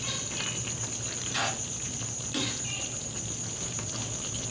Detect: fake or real real